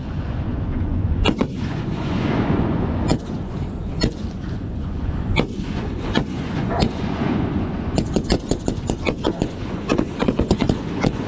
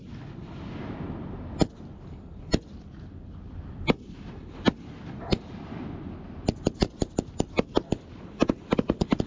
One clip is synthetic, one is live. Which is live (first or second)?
second